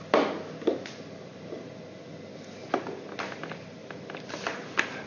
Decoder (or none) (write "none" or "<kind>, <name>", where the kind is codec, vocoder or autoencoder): none